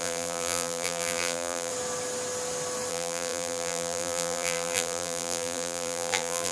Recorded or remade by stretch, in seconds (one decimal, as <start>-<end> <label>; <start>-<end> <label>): 0.0-1.7 remade; 1.7-2.9 recorded; 2.9-6.5 remade